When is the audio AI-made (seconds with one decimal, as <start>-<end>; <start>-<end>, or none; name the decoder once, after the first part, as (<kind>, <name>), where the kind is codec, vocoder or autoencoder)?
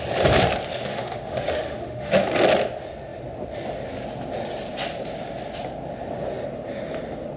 0.9-2.2 (autoencoder, DAC-VAE)